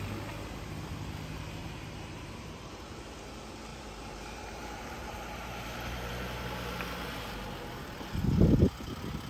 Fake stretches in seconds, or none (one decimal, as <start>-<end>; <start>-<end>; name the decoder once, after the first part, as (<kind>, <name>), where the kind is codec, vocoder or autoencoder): 1.6-2.7 (vocoder, BigVGAN v2); 3.7-6.1